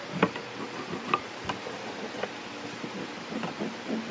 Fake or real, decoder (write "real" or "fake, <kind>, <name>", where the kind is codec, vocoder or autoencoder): real